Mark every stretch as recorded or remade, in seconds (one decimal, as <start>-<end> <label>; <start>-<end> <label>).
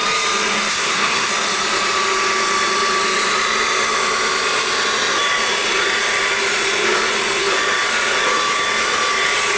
0.0-0.7 recorded; 0.7-1.3 remade; 1.3-9.6 recorded